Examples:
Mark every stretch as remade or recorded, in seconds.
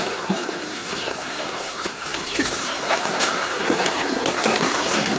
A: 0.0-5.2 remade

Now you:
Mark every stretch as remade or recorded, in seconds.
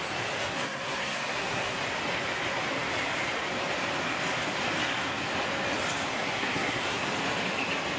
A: 0.0-0.4 recorded; 0.4-1.8 remade; 1.8-6.1 recorded; 6.1-7.1 remade; 7.1-8.0 recorded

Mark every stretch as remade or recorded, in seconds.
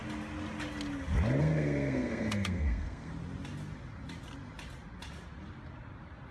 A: 0.0-1.4 recorded; 1.4-3.1 remade; 3.1-6.3 recorded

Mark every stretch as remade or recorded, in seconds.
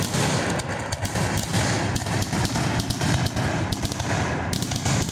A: 0.0-5.1 recorded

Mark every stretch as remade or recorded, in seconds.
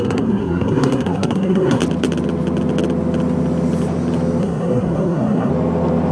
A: 0.0-1.8 remade; 1.8-4.4 recorded; 4.4-5.5 remade; 5.5-6.1 recorded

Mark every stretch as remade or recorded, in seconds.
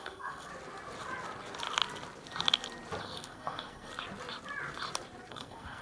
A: 0.0-0.5 remade; 0.5-3.0 recorded; 3.0-3.9 remade; 3.9-5.3 recorded; 5.3-5.8 remade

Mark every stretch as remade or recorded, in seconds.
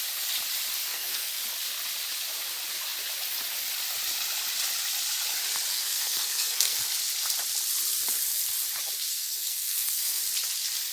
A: 0.0-0.9 recorded; 0.9-1.4 remade; 1.4-5.7 recorded; 5.7-6.8 remade; 6.8-9.1 recorded; 9.1-10.2 remade; 10.2-10.9 recorded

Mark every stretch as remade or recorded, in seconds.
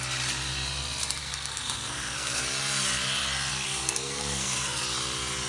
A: 0.0-1.2 recorded; 1.2-2.4 remade; 2.4-3.5 recorded; 3.5-4.8 remade; 4.8-5.5 recorded